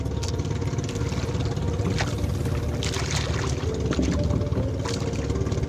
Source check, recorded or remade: recorded